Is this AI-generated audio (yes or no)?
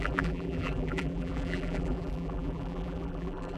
yes